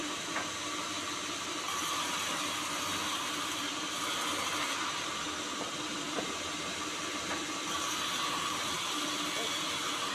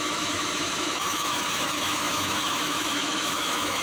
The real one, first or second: first